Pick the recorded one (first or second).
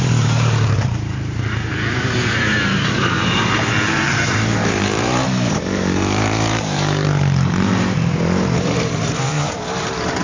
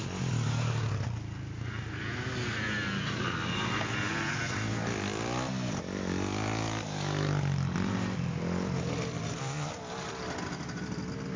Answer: second